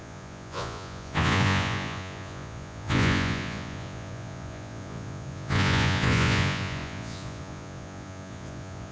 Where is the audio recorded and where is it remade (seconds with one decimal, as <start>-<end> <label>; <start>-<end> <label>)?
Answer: 0.0-8.9 remade